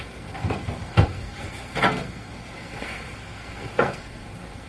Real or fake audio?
fake